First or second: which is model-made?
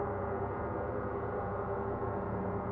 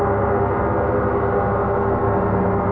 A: first